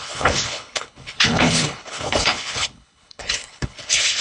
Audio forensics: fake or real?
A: fake